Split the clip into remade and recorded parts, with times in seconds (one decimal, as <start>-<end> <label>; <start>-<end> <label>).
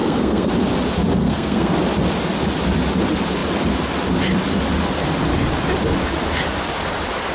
0.0-0.5 remade; 0.5-1.2 recorded; 1.2-1.7 remade; 1.7-7.3 recorded